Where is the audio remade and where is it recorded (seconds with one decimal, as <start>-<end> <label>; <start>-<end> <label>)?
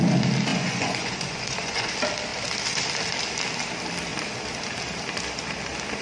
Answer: 0.0-0.5 recorded; 0.5-1.9 remade; 1.9-6.0 recorded